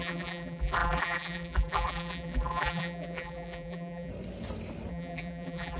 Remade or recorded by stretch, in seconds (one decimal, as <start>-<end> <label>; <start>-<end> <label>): 0.0-4.1 remade; 4.1-4.9 recorded; 4.9-5.8 remade